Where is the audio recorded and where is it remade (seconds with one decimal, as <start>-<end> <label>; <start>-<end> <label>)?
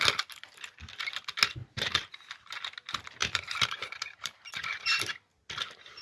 0.0-1.6 recorded; 1.6-2.4 remade; 2.4-3.2 recorded; 3.2-4.5 remade; 4.5-6.0 recorded